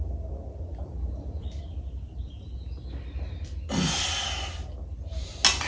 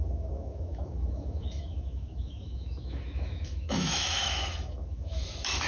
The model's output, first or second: second